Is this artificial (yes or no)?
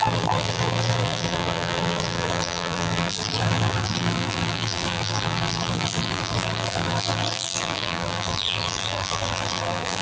yes